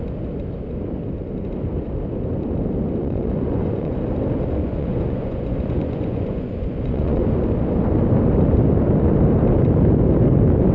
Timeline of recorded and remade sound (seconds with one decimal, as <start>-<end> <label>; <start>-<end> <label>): 0.0-3.0 recorded; 3.0-4.0 remade; 4.0-4.6 recorded; 4.6-7.3 remade; 7.3-10.7 recorded